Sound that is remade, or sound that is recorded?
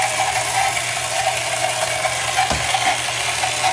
recorded